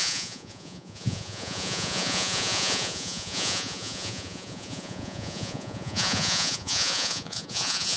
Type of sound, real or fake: fake